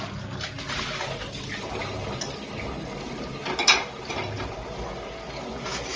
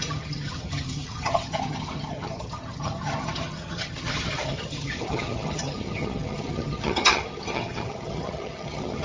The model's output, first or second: second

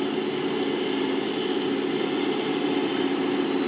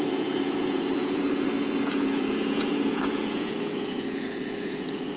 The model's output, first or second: second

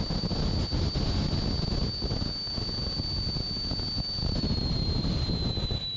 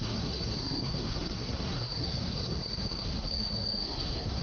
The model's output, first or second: second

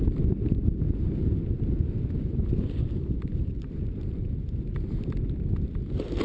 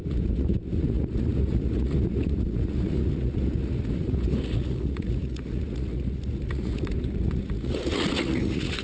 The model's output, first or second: second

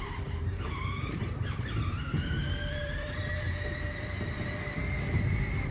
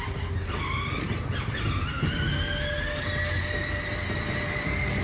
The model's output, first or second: first